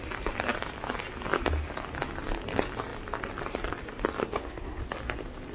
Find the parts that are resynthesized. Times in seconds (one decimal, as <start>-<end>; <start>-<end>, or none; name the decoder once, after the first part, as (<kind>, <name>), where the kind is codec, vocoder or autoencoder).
4.2-4.8 (codec, SNAC)